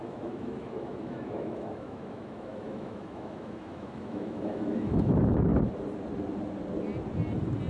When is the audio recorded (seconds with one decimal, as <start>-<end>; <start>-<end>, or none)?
5.5-7.7